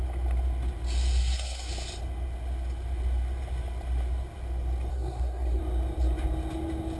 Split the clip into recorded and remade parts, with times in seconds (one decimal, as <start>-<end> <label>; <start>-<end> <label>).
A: 0.0-1.2 recorded; 1.2-1.7 remade; 1.7-4.9 recorded; 4.9-5.6 remade; 5.6-7.0 recorded